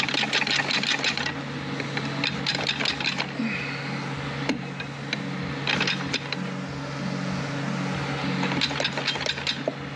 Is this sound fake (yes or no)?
no